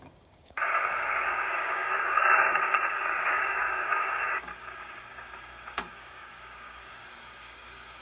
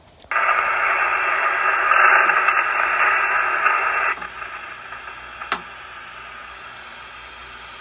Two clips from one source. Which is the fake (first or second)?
first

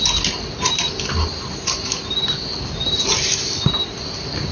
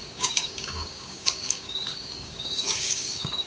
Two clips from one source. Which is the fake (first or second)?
second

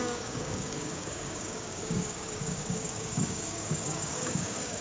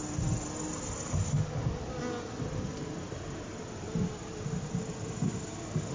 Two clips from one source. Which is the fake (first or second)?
first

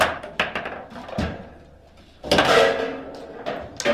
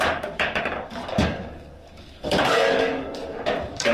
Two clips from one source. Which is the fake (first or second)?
second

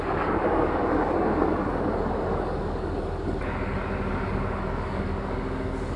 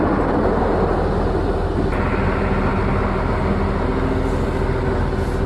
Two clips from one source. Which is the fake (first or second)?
first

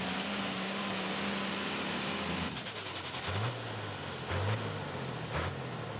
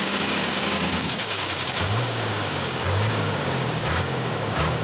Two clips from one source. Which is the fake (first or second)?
second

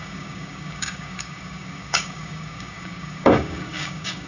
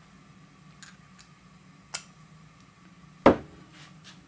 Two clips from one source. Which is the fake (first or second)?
first